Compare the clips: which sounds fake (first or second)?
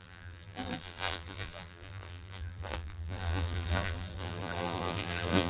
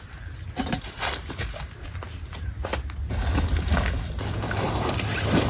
first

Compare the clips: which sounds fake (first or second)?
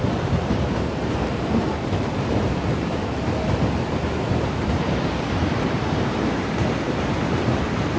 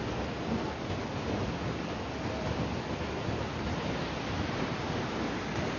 first